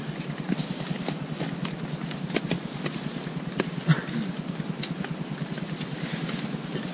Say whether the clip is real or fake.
real